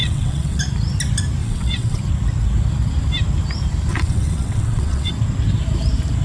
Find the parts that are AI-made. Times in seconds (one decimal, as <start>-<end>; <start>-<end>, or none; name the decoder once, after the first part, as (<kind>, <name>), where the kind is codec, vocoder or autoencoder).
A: 0.0-0.6 (vocoder, WaveNeXt); 1.4-2.0; 3.9-5.1